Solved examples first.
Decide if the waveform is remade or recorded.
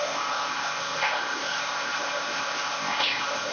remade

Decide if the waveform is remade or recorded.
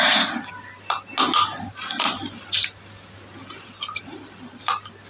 recorded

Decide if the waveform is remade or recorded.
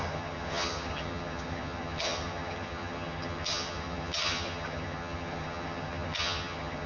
remade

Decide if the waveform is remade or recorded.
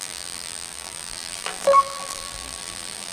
remade